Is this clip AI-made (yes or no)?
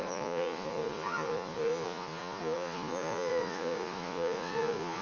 yes